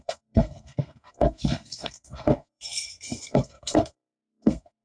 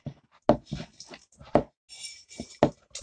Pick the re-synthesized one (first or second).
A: first